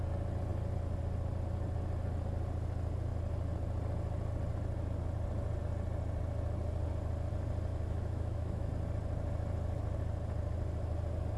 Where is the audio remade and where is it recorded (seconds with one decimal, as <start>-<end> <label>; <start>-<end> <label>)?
0.0-7.7 recorded; 7.7-8.7 remade; 8.7-11.4 recorded